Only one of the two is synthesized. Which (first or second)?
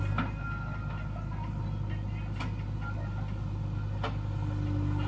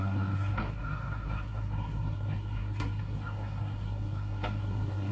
second